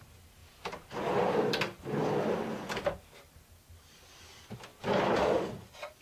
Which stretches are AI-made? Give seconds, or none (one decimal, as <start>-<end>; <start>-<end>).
0.4-4.0; 4.7-6.0